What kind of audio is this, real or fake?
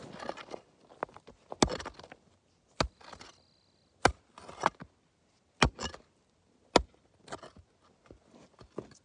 real